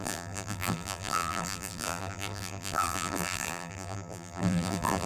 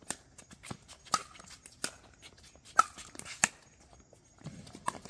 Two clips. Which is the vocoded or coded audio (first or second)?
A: first